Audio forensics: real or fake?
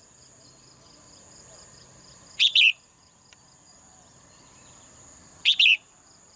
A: real